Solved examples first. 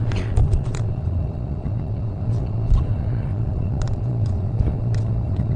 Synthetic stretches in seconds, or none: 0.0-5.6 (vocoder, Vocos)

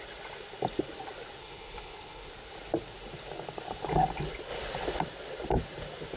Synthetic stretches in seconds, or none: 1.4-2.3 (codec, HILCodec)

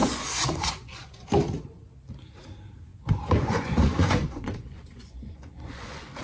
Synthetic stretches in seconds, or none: 0.0-1.1 (vocoder, Vocos); 2.9-6.2